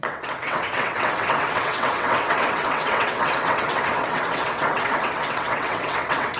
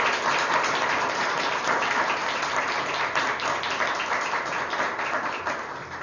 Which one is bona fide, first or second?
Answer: second